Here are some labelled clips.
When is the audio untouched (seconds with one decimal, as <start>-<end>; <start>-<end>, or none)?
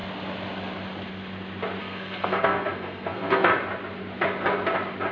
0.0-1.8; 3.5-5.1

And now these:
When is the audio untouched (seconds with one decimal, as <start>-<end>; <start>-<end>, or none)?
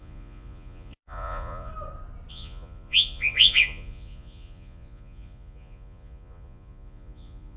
1.7-2.3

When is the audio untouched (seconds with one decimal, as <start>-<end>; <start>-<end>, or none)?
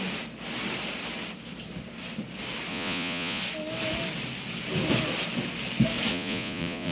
0.0-2.7; 3.4-6.1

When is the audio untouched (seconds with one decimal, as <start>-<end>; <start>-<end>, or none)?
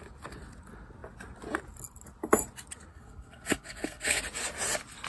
0.0-2.9; 4.2-5.1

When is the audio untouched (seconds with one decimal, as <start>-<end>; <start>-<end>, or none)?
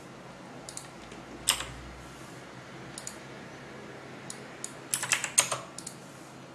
0.0-6.5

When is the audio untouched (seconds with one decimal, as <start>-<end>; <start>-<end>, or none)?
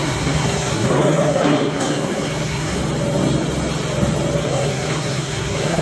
2.8-4.4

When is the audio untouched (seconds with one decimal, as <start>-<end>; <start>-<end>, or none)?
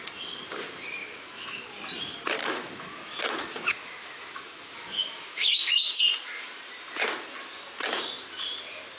0.0-1.0; 1.7-2.4; 6.0-9.0